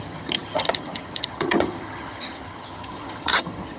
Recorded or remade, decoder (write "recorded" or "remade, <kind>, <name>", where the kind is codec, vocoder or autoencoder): remade, vocoder, HiFi-GAN